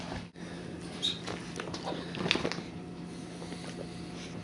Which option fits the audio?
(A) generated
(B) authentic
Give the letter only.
B